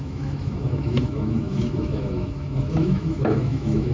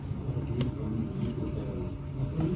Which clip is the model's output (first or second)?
first